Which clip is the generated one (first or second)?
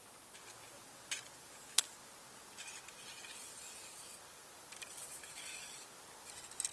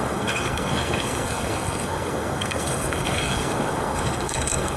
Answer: second